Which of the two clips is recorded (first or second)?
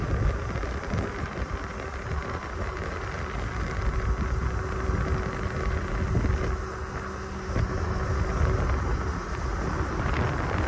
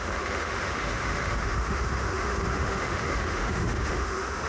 first